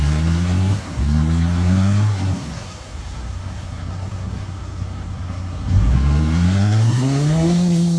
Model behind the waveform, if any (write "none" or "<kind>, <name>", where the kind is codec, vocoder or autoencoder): codec, SNAC